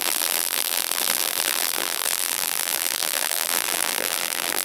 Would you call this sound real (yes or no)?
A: no